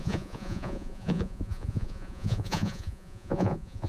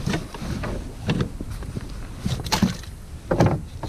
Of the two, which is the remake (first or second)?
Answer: first